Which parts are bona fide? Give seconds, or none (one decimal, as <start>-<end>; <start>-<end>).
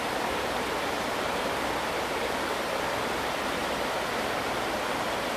3.6-4.9